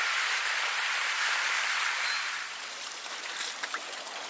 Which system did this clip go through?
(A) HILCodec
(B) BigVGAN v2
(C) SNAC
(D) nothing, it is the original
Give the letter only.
B